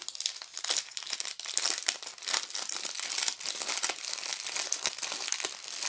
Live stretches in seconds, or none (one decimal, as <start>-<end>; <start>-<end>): 0.0-4.3; 4.9-5.9